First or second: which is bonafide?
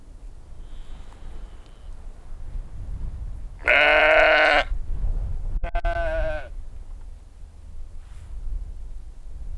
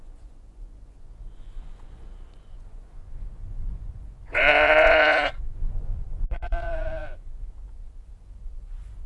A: first